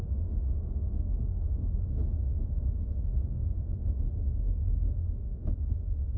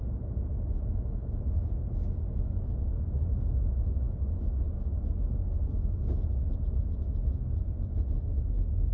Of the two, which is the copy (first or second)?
first